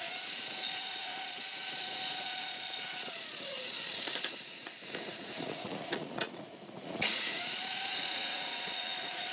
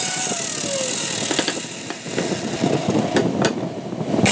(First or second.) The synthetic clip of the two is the first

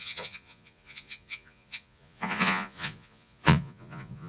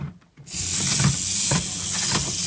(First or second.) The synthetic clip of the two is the first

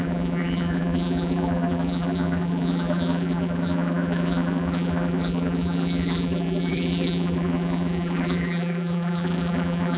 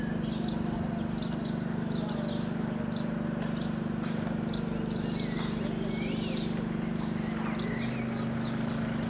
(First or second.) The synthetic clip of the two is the first